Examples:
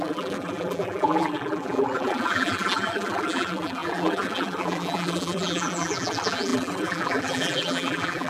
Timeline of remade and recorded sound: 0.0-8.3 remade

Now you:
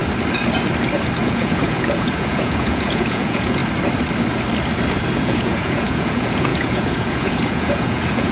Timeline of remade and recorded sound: 0.0-1.2 recorded; 1.2-3.6 remade; 3.6-5.2 recorded; 5.2-8.3 remade

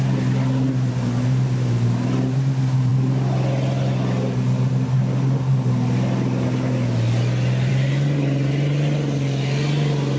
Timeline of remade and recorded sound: 0.0-10.2 recorded

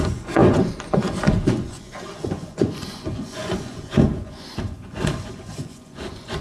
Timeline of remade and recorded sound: 0.0-6.4 remade

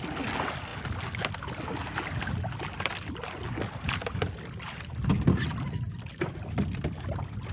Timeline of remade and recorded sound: 0.0-7.5 recorded